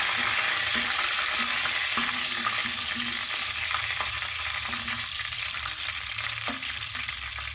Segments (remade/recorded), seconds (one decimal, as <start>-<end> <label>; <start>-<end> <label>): 0.0-0.7 remade; 0.7-2.1 recorded; 2.1-2.6 remade; 2.6-4.5 recorded; 4.5-7.5 remade